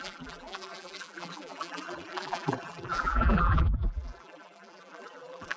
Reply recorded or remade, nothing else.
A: remade